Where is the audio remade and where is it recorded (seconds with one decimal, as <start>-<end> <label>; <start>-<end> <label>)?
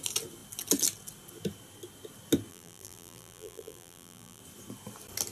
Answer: 0.0-2.5 recorded; 2.5-4.4 remade; 4.4-5.3 recorded